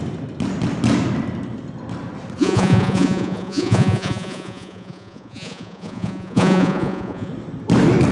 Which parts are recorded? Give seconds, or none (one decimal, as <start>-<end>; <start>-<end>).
0.0-2.4; 7.3-8.1